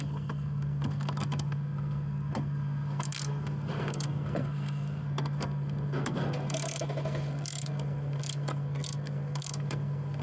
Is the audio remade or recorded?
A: remade